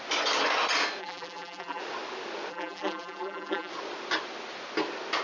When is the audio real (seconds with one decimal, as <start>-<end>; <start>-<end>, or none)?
0.0-1.0; 1.8-2.5; 3.7-5.2

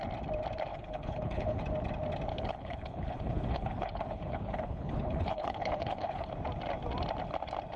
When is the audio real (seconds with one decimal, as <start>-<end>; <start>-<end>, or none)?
0.0-0.7; 1.6-2.3; 6.3-7.8

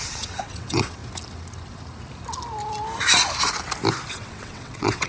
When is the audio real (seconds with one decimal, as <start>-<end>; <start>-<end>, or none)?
1.0-4.1

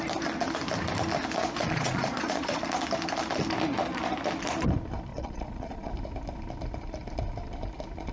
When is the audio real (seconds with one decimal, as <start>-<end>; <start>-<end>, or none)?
0.0-1.4; 2.6-5.1; 5.9-8.1

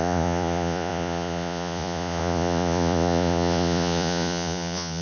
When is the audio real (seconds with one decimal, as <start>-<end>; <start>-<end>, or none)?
none

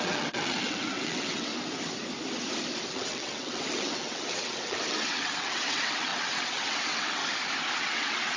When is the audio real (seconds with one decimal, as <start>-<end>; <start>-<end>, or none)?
1.5-2.9; 7.2-7.8